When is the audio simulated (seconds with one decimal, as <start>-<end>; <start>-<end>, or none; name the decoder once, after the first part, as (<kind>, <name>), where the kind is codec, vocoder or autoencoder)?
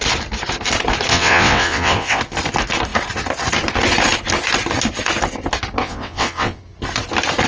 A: 1.1-2.2 (vocoder, WaveNeXt); 5.8-6.6